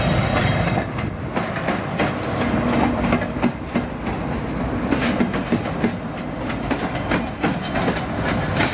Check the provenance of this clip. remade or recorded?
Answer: recorded